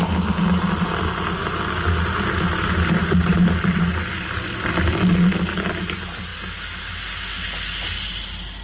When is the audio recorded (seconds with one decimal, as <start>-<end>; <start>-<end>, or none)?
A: 0.0-8.6